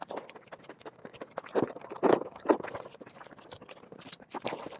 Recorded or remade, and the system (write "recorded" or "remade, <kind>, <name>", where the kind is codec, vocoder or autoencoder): recorded